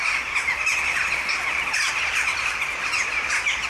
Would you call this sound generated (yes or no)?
no